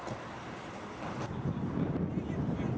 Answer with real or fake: real